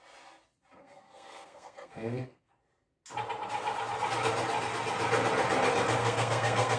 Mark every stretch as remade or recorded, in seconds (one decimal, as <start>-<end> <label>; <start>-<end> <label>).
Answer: 0.0-0.8 recorded; 0.8-2.5 remade; 2.5-6.0 recorded; 6.0-6.8 remade